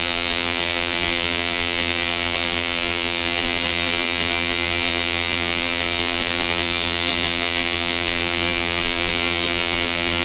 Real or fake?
fake